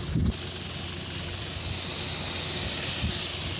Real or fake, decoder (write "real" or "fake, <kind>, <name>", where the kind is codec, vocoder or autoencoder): real